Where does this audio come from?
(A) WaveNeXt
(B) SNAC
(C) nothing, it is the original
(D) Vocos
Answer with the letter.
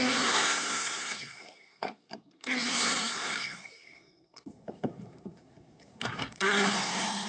B